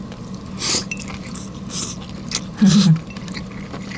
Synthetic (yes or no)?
no